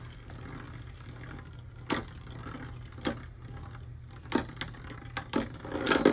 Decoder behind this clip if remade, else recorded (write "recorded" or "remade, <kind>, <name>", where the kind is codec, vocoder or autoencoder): recorded